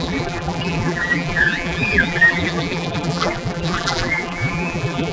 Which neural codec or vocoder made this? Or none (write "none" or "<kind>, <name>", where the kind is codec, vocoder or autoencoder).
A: vocoder, BigVGAN v2